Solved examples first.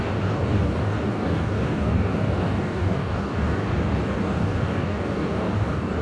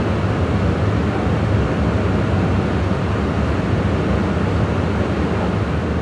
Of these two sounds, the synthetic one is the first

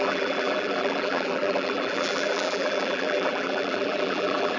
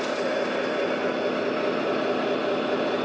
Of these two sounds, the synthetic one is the first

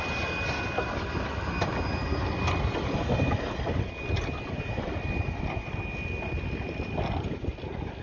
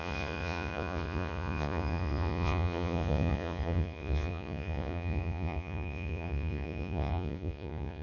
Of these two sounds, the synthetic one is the second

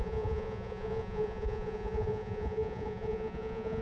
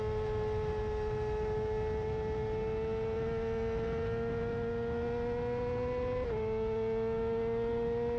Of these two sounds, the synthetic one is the first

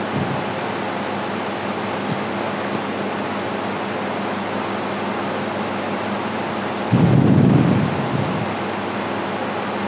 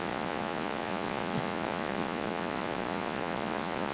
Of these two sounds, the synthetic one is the second